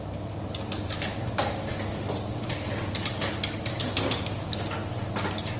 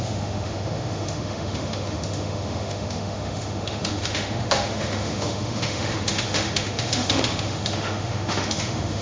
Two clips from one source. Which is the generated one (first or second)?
second